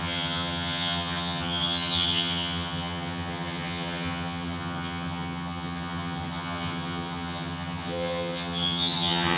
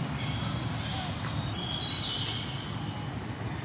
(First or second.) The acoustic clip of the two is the second